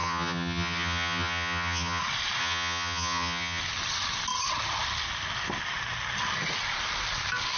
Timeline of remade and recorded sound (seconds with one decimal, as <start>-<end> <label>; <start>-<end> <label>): 0.0-2.0 remade; 2.0-2.4 recorded; 2.4-3.6 remade; 3.6-7.6 recorded